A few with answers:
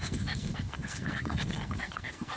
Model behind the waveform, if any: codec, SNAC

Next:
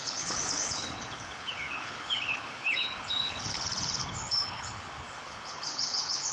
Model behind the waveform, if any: codec, HILCodec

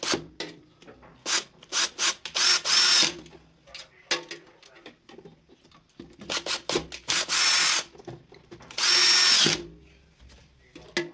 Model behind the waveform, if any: none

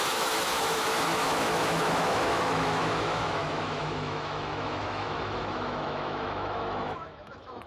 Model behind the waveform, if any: autoencoder, DAC-VAE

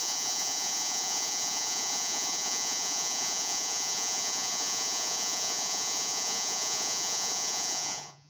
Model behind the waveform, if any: vocoder, Vocos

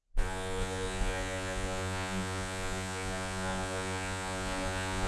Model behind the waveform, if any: vocoder, Vocos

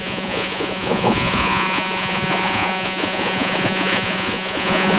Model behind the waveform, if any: vocoder, Vocos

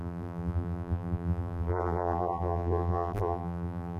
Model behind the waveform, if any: vocoder, BigVGAN v2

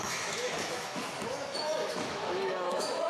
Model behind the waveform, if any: autoencoder, DAC-VAE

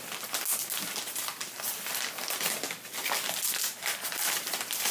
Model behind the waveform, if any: none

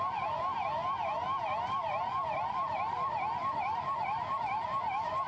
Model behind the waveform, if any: vocoder, BigVGAN v2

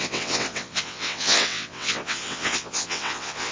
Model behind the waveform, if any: vocoder, WaveNeXt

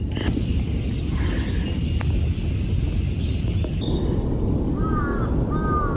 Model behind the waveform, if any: none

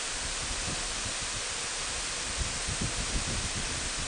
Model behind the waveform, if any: none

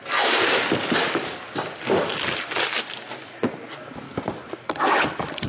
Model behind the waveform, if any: vocoder, BigVGAN v2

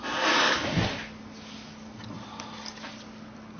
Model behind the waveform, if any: none